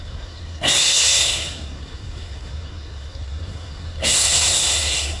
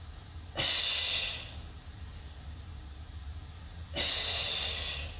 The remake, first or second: first